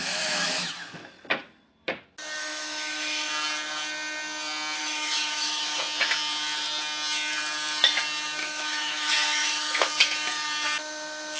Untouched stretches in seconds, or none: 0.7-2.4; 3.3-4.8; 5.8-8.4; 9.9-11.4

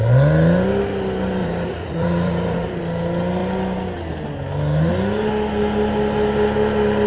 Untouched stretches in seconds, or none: 0.0-1.4; 2.8-7.1

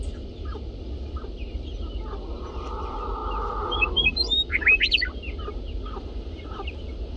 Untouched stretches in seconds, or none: 0.0-7.2

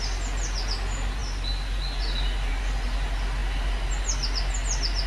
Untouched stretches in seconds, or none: 0.0-5.1

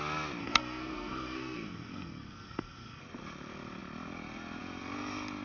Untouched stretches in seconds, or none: 0.0-0.4; 3.0-5.4

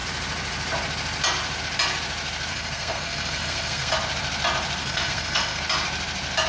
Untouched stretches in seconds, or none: 0.0-2.5; 3.9-4.8; 5.6-6.5